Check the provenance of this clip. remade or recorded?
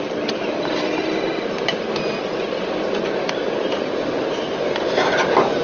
recorded